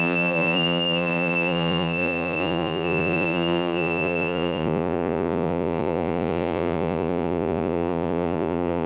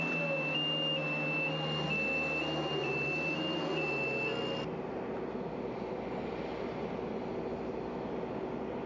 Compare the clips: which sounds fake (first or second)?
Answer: first